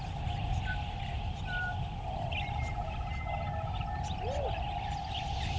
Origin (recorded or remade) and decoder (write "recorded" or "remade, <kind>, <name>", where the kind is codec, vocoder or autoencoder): recorded